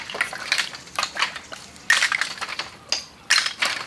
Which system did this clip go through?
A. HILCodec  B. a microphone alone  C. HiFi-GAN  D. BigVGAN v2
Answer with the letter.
B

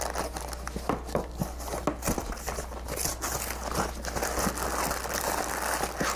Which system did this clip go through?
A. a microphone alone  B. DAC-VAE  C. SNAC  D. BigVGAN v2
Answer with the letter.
A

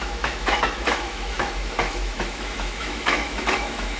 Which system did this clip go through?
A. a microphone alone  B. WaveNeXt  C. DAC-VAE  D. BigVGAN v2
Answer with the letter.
C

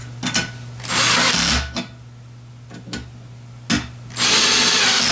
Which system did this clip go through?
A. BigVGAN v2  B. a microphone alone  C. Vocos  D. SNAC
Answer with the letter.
B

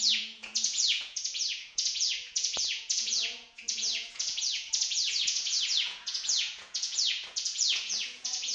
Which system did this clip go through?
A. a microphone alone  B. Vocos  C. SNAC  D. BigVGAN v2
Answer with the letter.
B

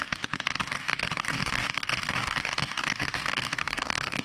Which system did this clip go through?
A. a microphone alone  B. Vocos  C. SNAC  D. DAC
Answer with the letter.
D